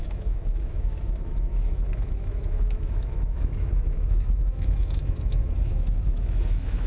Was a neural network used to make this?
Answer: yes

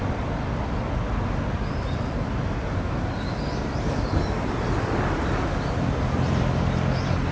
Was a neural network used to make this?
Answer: no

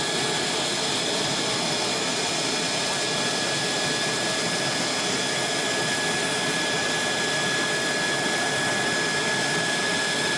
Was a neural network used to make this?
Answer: no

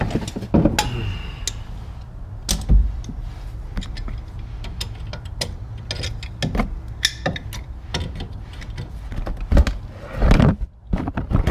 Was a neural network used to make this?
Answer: no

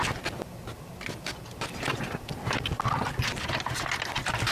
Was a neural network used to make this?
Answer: no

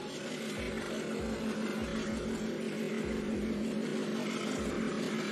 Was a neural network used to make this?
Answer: no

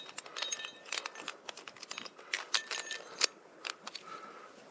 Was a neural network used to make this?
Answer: no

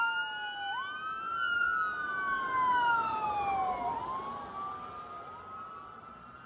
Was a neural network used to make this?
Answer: no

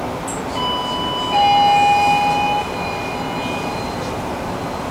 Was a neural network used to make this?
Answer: no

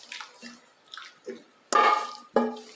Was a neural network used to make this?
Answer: no